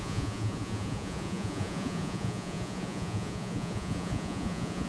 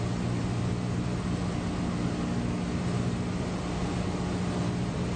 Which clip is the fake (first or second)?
first